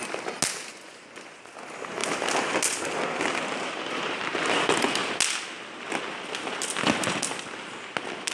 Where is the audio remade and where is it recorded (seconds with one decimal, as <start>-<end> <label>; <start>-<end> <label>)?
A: 0.0-0.7 recorded; 0.7-1.4 remade; 1.4-8.3 recorded